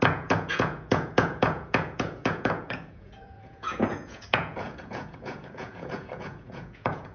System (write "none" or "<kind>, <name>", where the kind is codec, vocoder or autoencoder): vocoder, Vocos